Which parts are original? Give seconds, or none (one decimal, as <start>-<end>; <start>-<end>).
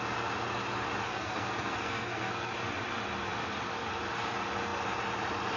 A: 0.0-1.1; 2.5-5.6